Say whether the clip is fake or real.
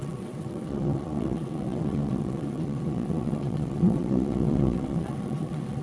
fake